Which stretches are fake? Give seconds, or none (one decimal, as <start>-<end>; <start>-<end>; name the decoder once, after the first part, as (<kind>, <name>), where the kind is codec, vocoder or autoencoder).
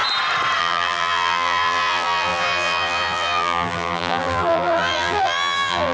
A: 0.6-5.9 (vocoder, BigVGAN v2)